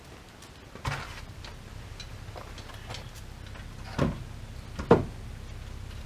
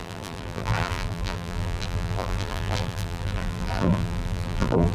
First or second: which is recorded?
first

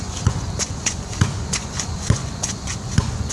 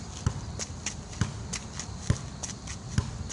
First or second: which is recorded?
second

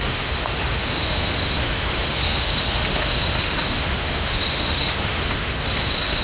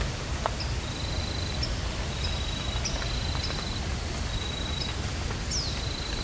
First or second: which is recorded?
second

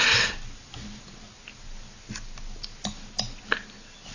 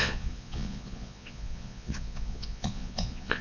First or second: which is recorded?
first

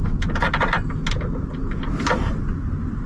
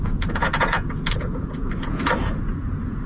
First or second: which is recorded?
first